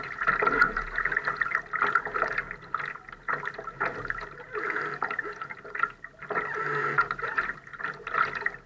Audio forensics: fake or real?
real